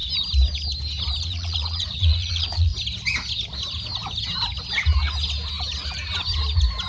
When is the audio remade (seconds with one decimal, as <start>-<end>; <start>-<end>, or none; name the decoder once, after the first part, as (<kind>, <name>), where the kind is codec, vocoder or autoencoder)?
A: 1.2-2.7 (vocoder, Vocos)